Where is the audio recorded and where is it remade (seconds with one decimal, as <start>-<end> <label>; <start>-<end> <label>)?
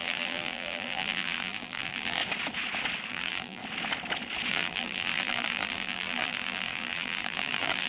0.0-2.2 remade; 2.2-3.1 recorded; 3.1-3.6 remade; 3.6-4.5 recorded; 4.5-7.9 remade